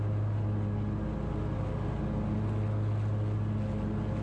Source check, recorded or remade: recorded